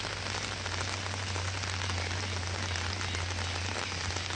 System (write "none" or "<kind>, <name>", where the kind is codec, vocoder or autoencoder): none